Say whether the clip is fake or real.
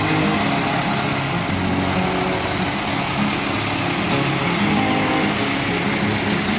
real